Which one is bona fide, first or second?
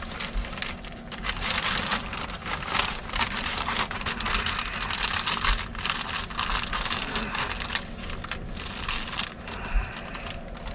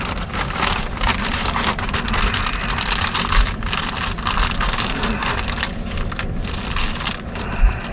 first